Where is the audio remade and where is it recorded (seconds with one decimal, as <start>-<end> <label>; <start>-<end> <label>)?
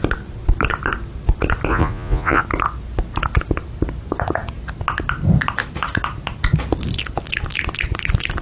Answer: 0.0-1.7 recorded; 1.7-2.4 remade; 2.4-8.4 recorded